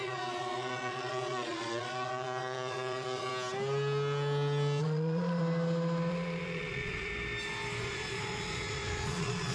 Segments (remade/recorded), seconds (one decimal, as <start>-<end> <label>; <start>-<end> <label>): 0.0-3.3 remade; 3.3-4.8 recorded; 4.8-5.4 remade; 5.4-6.1 recorded; 6.1-7.1 remade; 7.1-7.8 recorded; 7.8-9.5 remade